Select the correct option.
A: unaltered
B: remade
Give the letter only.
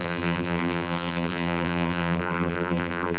B